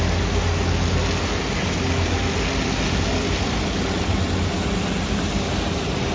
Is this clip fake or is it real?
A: real